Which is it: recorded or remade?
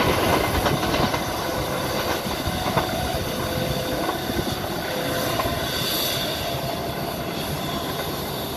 recorded